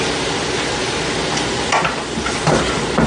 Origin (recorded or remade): recorded